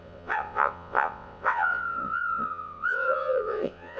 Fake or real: fake